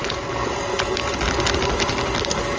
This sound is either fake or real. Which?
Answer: real